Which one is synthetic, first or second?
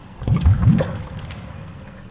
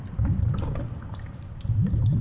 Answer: first